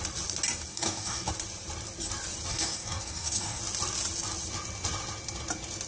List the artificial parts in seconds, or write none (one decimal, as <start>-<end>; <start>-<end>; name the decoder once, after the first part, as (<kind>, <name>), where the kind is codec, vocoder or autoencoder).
0.7-1.3 (codec, DAC); 2.5-3.6